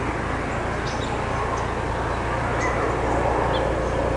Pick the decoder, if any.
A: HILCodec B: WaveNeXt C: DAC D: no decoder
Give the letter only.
D